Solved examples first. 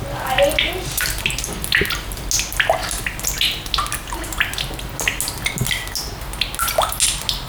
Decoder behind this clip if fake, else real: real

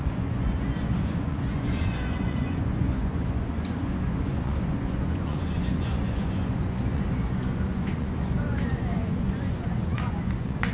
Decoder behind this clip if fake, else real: fake, vocoder, Vocos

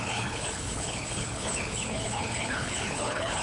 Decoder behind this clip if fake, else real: fake, codec, HILCodec